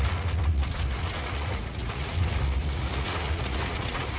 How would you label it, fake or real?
fake